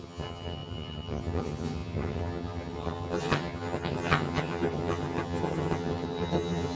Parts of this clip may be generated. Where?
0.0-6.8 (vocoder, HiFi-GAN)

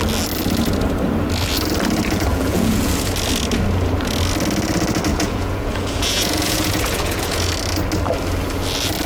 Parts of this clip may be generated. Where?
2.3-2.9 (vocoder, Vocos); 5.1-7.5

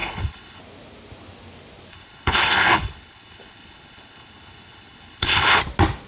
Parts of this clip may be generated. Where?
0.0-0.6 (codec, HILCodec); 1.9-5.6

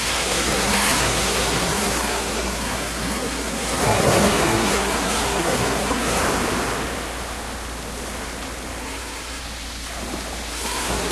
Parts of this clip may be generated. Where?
0.0-6.2 (codec, SNAC); 8.8-9.4; 10.5-11.1

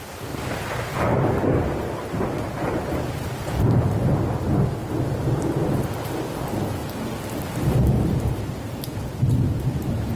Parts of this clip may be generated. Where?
0.9-4.2 (vocoder, BigVGAN v2); 4.8-5.9; 6.8-8.2; 9.0-10.2

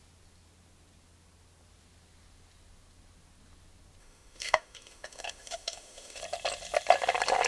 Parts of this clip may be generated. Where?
4.0-6.2 (autoencoder, DAC-VAE)

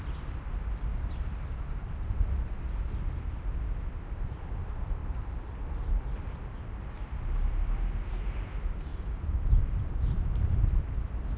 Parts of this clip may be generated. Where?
0.0-11.4 (vocoder, BigVGAN v2)